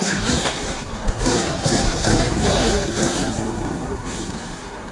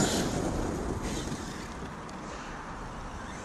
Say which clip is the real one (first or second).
second